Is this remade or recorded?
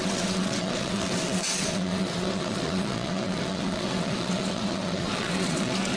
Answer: remade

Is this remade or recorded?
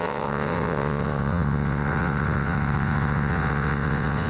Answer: remade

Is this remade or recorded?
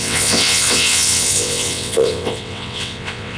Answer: remade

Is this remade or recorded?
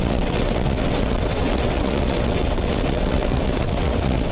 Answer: remade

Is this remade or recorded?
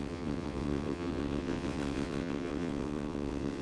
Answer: remade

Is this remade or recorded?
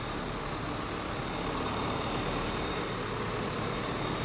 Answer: recorded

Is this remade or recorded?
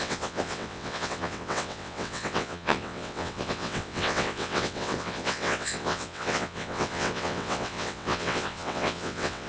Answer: remade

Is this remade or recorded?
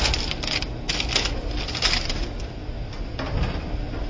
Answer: recorded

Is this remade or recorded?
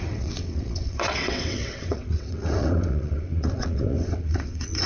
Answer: remade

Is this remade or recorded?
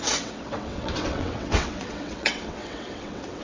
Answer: remade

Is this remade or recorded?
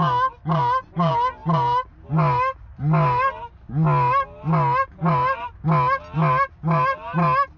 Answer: recorded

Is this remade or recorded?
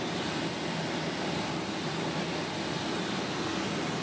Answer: recorded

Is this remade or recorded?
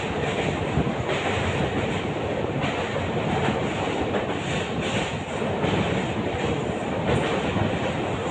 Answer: recorded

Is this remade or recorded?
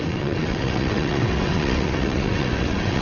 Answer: remade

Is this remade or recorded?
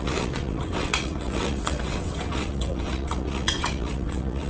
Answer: remade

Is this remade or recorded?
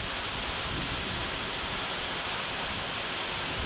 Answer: recorded